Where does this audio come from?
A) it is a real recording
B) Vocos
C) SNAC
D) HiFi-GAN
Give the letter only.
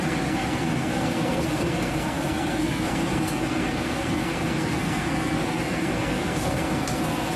C